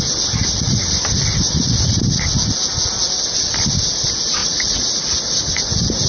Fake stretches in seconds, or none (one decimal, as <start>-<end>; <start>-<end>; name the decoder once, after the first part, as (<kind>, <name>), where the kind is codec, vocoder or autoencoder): 4.4-5.6 (vocoder, Vocos)